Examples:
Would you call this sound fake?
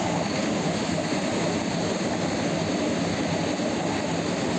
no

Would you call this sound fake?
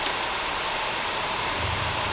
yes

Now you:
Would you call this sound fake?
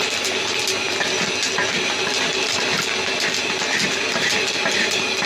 no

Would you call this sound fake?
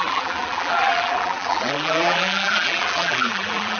yes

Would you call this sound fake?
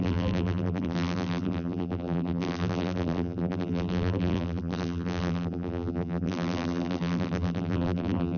yes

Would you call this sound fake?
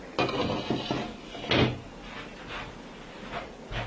no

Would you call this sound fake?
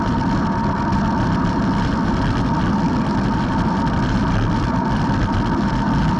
yes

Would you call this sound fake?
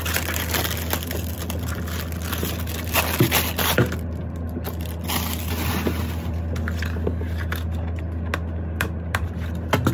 no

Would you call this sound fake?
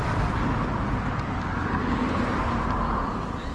yes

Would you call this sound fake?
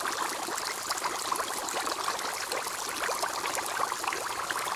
no